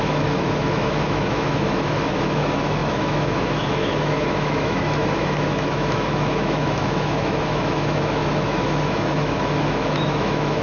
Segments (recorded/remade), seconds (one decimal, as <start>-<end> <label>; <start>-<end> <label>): 0.0-10.6 remade